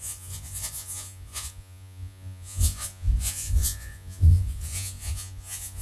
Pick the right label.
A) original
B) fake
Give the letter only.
B